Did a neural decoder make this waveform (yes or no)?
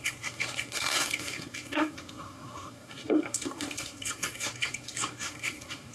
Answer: yes